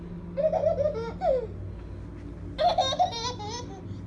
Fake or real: real